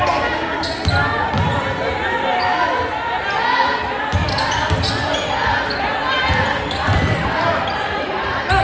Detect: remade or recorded recorded